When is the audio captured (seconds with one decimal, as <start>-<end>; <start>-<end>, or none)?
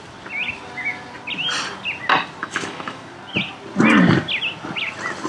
0.0-2.4; 3.1-5.3